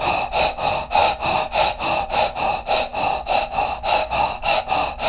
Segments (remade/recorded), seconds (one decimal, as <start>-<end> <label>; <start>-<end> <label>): 0.0-3.9 recorded; 3.9-4.6 remade; 4.6-5.1 recorded